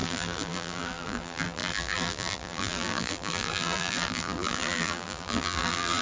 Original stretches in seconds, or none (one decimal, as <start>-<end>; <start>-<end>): none